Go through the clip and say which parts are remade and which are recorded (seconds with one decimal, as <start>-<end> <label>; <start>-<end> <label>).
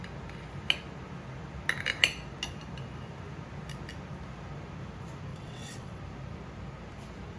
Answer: 0.0-5.3 recorded; 5.3-6.0 remade; 6.0-7.4 recorded